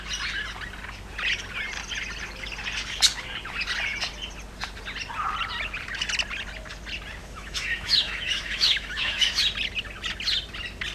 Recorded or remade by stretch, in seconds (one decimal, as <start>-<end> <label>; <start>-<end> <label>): 0.0-7.2 recorded; 7.2-9.4 remade; 9.4-10.9 recorded